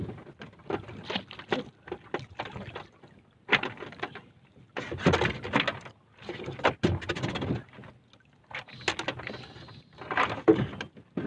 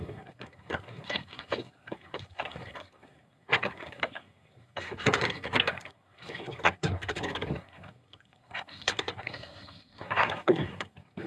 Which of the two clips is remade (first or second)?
second